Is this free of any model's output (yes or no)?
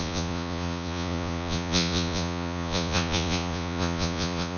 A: no